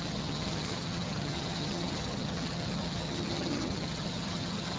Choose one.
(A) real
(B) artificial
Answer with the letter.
B